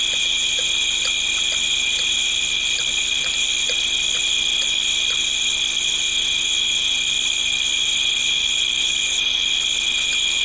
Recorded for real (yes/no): yes